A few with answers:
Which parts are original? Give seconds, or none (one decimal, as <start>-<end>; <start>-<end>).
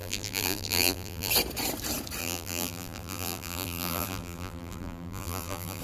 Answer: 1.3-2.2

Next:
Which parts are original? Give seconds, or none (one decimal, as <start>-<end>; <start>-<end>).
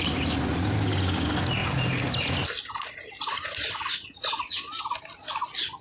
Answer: 0.0-5.8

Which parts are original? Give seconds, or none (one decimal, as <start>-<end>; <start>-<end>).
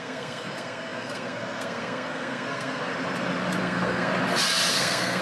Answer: 2.9-3.6; 4.1-4.7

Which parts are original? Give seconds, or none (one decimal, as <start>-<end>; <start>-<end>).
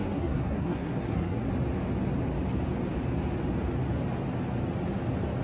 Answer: 1.5-5.4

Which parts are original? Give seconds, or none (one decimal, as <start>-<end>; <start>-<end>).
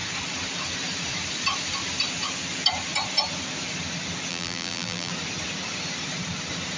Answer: 0.0-4.3; 5.1-6.8